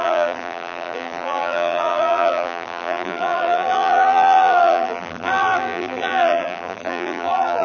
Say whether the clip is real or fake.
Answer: fake